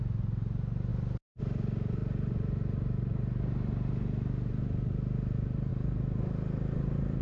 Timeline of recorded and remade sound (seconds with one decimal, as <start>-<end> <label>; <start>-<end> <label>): 0.0-7.2 recorded